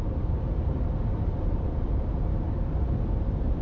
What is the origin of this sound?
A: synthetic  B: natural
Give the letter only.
A